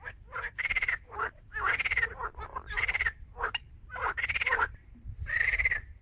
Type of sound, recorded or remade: remade